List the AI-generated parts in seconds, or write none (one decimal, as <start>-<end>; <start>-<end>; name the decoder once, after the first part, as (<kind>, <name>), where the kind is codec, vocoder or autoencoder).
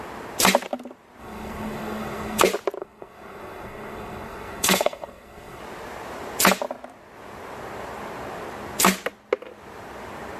1.2-2.4 (codec, SNAC); 2.8-5.6